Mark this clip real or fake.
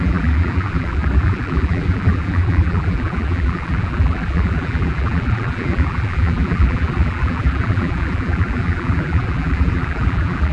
fake